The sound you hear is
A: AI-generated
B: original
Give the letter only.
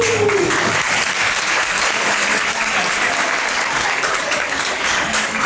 A